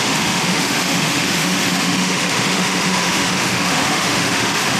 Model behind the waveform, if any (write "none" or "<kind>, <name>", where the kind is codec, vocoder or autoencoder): autoencoder, DAC-VAE